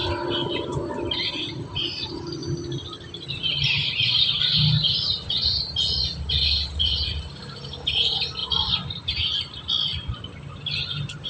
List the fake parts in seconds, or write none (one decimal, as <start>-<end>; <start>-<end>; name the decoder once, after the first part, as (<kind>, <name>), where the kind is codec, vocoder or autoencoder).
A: 0.0-2.4 (vocoder, BigVGAN v2); 6.3-11.3